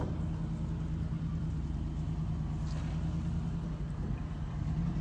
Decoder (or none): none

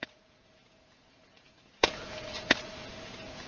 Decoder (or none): vocoder, Vocos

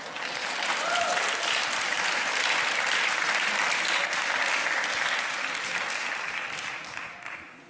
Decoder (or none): none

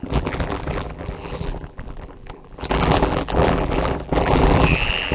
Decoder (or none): vocoder, BigVGAN v2